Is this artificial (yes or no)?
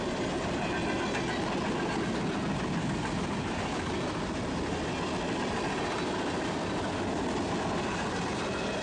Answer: no